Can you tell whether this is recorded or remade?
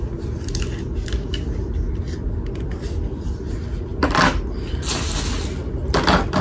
recorded